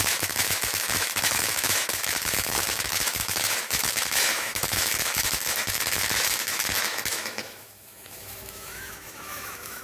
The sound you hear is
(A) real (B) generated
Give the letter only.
B